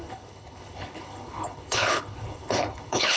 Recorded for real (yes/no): no